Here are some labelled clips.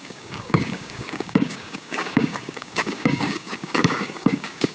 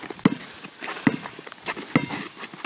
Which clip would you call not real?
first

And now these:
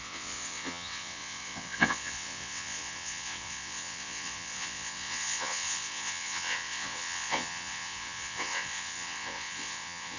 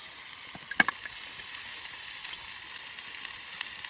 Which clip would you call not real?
first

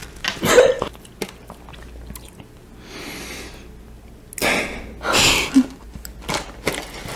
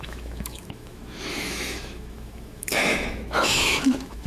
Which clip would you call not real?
second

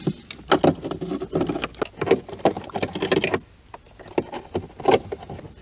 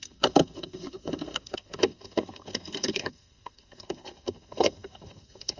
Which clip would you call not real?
second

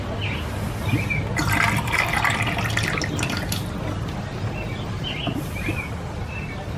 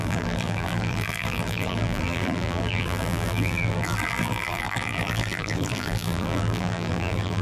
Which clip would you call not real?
second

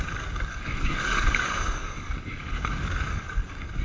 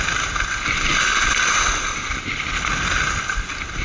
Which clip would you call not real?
first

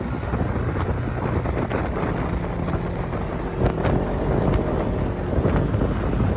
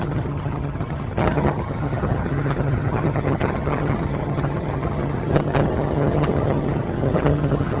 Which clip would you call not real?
second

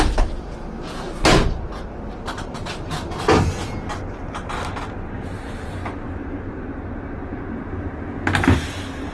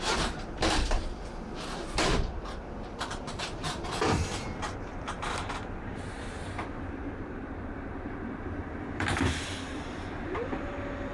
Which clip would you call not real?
second